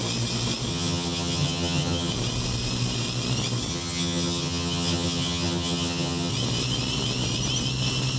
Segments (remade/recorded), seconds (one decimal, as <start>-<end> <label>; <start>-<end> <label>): 0.0-0.7 recorded; 0.7-2.1 remade; 2.1-3.7 recorded; 3.7-6.3 remade; 6.3-8.2 recorded